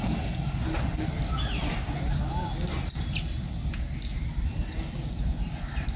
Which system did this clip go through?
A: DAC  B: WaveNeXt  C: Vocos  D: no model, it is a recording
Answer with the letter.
D